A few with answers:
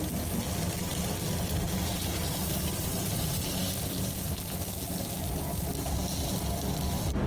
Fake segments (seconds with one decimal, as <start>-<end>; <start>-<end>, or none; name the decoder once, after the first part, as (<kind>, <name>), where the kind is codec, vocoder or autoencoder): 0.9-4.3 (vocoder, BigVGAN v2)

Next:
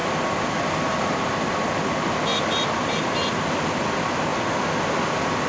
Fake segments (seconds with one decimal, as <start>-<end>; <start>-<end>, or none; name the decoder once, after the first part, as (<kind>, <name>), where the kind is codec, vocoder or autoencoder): none

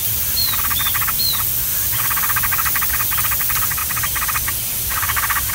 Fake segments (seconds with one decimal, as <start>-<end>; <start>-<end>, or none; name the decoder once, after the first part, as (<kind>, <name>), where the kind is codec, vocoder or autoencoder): 1.7-2.9 (vocoder, BigVGAN v2); 3.8-5.5